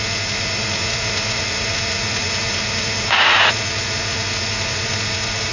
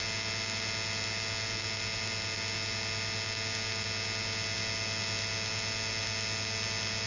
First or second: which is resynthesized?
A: first